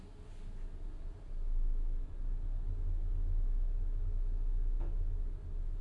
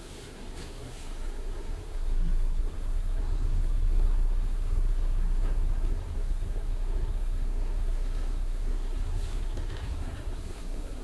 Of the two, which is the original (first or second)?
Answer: first